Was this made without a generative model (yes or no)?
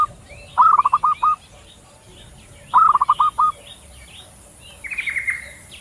yes